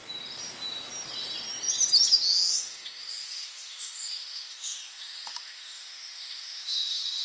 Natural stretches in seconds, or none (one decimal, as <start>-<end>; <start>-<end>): 0.0-2.5